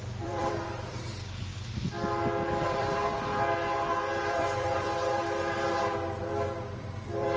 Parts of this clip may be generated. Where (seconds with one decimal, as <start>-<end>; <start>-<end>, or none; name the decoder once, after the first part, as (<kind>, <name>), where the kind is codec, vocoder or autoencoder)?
0.0-1.5 (vocoder, BigVGAN v2); 2.7-3.3; 4.2-4.9; 6.8-7.4